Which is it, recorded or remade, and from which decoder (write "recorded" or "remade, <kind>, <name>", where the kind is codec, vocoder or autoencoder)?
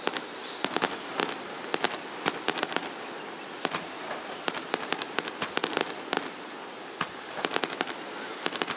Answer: recorded